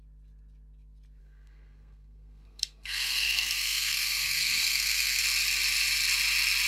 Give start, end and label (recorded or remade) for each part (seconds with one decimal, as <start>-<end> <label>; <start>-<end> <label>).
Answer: 0.0-1.2 recorded; 1.2-5.2 remade; 5.2-6.7 recorded